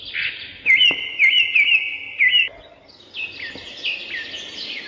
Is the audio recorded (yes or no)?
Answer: yes